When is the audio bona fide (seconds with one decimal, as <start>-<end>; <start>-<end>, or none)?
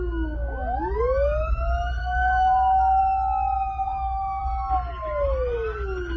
0.0-2.0; 3.0-3.9; 4.4-6.2